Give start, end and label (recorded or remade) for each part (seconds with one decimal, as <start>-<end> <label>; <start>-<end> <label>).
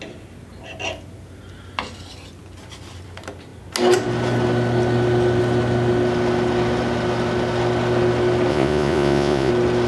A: 0.0-8.5 recorded; 8.5-9.5 remade; 9.5-9.9 recorded